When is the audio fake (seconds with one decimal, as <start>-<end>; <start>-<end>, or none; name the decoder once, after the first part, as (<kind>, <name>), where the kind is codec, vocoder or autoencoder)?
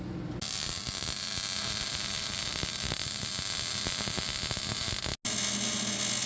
1.6-3.3 (vocoder, BigVGAN v2)